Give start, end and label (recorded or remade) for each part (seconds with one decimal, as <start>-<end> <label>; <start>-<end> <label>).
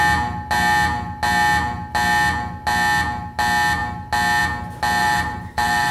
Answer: 0.0-5.0 recorded; 5.0-5.9 remade